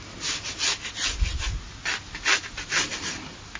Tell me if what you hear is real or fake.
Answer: real